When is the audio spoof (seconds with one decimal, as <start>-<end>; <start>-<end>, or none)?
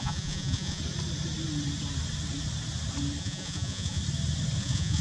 0.0-0.8; 3.2-4.0; 4.6-5.0